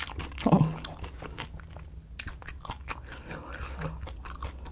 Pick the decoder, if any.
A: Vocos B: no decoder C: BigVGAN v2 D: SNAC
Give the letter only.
B